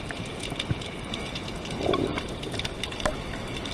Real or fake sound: real